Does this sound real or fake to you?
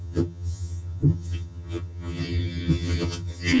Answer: fake